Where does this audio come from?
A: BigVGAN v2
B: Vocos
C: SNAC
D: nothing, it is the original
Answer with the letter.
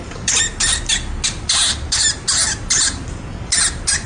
D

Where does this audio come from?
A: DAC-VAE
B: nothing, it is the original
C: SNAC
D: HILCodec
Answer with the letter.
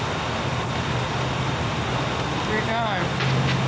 B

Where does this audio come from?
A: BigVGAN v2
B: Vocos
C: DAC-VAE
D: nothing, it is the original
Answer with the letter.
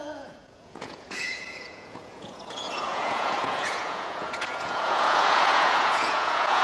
B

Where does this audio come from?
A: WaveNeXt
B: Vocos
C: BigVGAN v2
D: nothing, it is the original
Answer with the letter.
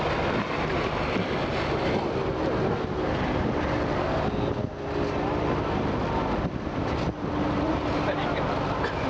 D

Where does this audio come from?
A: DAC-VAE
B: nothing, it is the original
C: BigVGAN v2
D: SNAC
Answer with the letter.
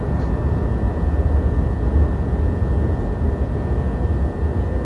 B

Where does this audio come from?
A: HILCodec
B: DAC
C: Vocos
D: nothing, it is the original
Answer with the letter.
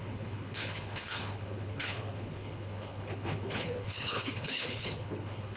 A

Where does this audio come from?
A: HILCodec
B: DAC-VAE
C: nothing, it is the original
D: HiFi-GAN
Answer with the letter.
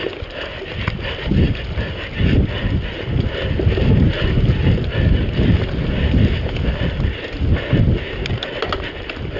C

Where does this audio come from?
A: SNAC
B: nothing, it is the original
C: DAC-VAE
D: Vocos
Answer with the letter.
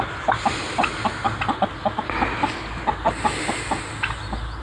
B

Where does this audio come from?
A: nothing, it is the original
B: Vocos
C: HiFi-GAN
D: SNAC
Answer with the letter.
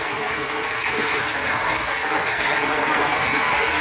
D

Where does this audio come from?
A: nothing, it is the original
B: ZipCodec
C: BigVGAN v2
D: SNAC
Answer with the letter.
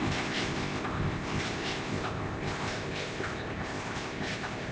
B